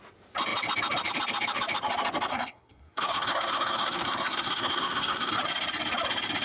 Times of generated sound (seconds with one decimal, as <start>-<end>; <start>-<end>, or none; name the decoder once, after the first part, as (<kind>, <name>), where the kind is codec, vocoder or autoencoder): 2.3-5.3 (codec, SNAC)